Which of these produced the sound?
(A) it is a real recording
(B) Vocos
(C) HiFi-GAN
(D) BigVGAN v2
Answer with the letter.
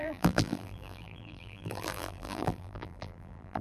D